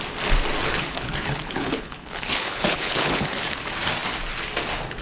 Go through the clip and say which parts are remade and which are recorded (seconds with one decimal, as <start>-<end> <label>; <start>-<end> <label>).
0.0-0.6 recorded; 0.6-3.6 remade; 3.6-5.0 recorded